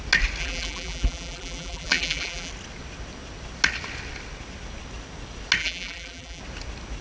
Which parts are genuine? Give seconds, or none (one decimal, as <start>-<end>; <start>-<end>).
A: 0.0-0.4; 2.5-5.6; 6.4-7.0